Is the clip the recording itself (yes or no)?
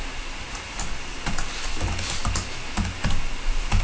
yes